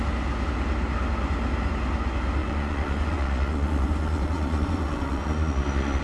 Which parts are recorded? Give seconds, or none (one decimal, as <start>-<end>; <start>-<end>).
0.0-2.4